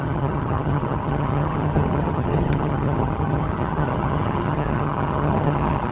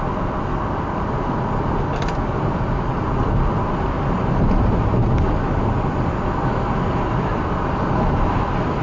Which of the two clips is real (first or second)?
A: second